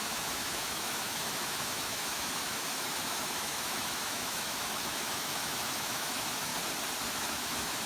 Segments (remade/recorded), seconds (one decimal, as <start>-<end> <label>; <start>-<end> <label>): 0.0-6.5 remade; 6.5-7.2 recorded; 7.2-7.9 remade